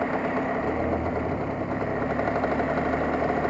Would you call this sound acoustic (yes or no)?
yes